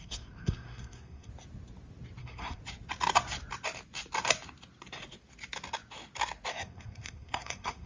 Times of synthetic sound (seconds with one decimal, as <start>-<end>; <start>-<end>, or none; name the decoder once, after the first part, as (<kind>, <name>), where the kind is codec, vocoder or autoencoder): 0.0-1.3 (codec, SNAC); 2.2-2.6; 6.5-7.9